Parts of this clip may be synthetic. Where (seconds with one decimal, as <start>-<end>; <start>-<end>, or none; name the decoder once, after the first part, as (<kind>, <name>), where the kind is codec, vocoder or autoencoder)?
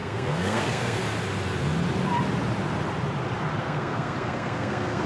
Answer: 0.0-1.0 (codec, SNAC); 3.6-5.1